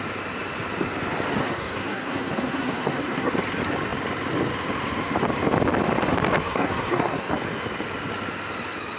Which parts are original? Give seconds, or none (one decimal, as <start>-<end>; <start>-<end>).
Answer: 0.0-1.4; 3.3-6.4; 7.3-9.0